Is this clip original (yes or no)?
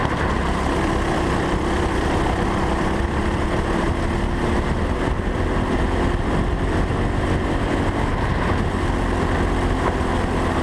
yes